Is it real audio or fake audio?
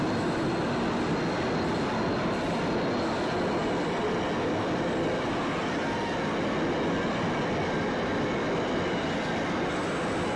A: real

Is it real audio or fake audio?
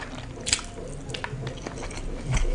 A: real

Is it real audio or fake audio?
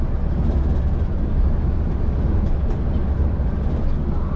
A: real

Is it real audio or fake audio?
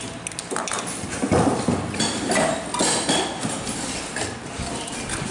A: real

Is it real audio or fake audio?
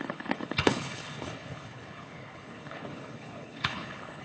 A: fake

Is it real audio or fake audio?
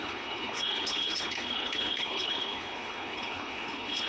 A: fake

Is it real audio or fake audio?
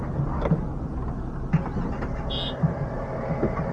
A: real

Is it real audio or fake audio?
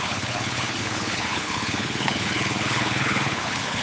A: fake